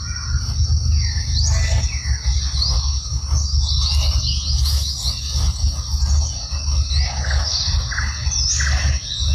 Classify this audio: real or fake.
real